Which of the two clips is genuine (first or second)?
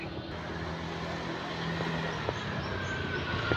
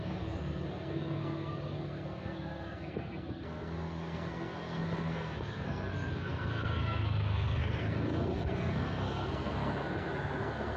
first